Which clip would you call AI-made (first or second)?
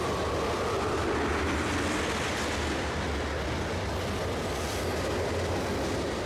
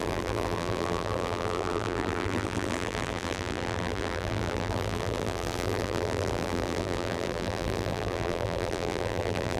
second